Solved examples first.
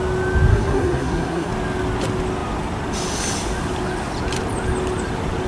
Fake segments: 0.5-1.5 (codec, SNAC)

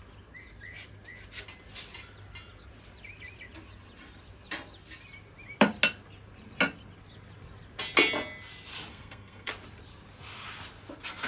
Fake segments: 8.9-9.5 (codec, SNAC)

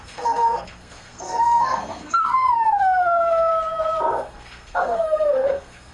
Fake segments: 0.0-3.5 (codec, SNAC); 4.1-5.9

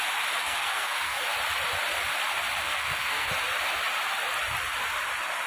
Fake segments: 0.4-1.2 (codec, SNAC); 2.6-3.3

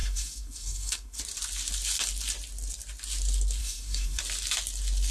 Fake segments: 0.0-1.2 (codec, SNAC); 3.6-4.2

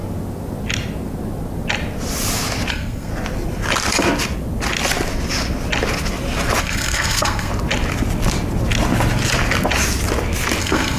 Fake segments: 2.7-3.1 (codec, SNAC); 6.6-7.5; 10.6-11.0

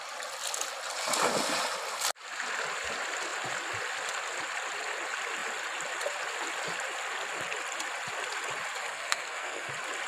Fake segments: 8.9-9.7 (codec, SNAC)

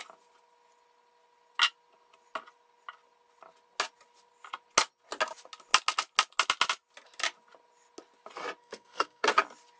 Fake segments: 8.6-9.3 (codec, SNAC)